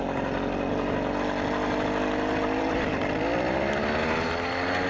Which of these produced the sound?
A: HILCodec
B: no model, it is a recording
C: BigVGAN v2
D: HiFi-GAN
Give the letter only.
B